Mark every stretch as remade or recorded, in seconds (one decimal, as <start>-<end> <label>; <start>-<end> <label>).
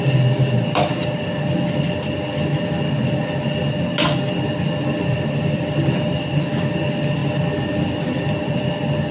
0.0-7.2 recorded; 7.2-8.6 remade; 8.6-9.1 recorded